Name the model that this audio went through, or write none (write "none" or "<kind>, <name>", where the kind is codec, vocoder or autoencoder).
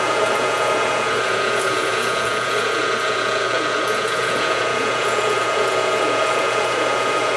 vocoder, Vocos